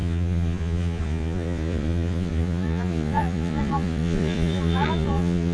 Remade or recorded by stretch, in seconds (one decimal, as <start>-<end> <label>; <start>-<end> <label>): 0.0-5.5 remade